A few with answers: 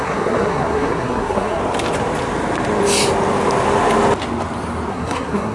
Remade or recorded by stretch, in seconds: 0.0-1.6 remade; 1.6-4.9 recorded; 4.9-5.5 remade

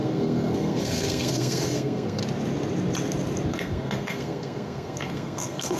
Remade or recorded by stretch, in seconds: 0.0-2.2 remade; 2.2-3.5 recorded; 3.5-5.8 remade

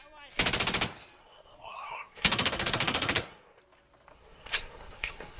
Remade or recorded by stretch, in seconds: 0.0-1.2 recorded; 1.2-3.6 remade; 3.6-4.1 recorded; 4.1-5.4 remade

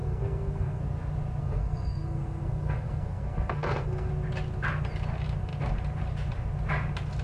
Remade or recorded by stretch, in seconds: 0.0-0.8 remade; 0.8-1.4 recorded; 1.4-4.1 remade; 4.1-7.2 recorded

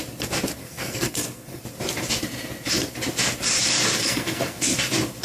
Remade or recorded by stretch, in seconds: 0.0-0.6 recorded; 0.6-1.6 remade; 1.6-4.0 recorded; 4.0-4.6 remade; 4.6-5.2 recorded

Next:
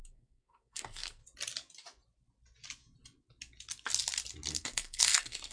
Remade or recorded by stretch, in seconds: 0.0-1.2 remade; 1.2-4.5 recorded; 4.5-5.5 remade